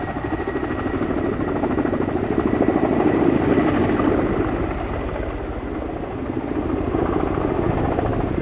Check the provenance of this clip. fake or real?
real